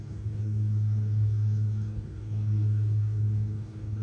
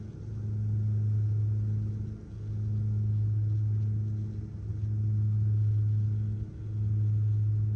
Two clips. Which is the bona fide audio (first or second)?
second